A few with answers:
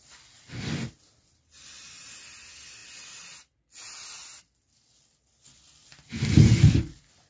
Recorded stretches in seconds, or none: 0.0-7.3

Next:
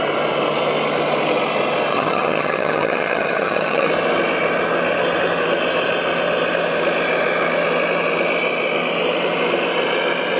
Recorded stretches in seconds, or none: 0.0-1.9; 3.9-10.4

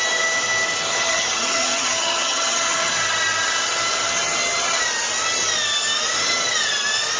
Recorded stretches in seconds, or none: 0.0-0.9; 2.9-7.2